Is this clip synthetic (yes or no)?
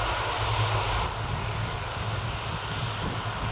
no